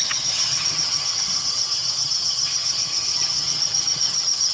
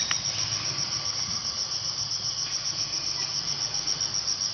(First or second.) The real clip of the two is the second